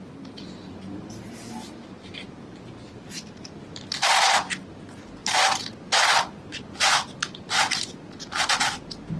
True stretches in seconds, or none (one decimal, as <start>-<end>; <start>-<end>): 0.0-9.2